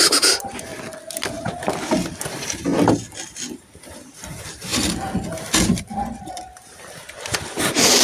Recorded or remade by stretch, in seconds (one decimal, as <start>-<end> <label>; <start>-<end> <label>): 0.0-0.7 remade; 0.7-2.3 recorded; 2.3-2.7 remade; 2.7-3.5 recorded; 3.5-4.7 remade; 4.7-5.8 recorded; 5.8-8.0 remade